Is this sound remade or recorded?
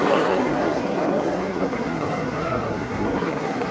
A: remade